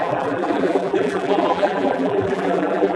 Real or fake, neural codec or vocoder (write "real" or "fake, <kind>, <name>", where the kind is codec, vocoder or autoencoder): fake, vocoder, BigVGAN v2